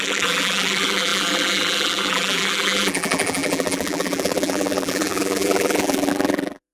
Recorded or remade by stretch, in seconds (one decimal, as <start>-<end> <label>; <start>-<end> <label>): 0.0-6.7 remade

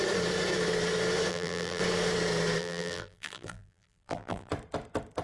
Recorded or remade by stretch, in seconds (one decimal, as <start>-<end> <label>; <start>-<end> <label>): 0.0-1.3 recorded; 1.3-1.8 remade; 1.8-2.6 recorded; 2.6-4.5 remade; 4.5-5.2 recorded

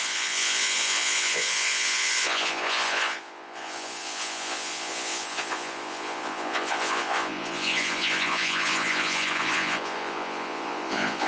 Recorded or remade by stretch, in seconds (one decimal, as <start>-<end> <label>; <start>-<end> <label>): 0.0-11.3 remade

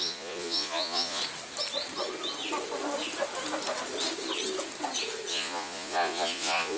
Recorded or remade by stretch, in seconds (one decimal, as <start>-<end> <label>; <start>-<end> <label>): 0.0-1.2 remade; 1.2-5.3 recorded; 5.3-6.8 remade